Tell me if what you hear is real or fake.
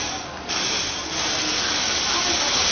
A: real